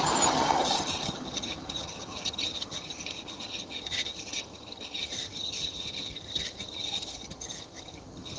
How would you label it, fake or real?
fake